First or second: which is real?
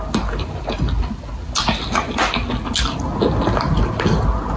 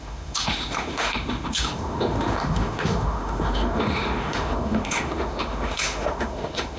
first